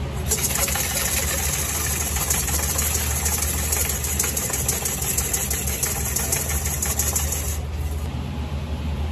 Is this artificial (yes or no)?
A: no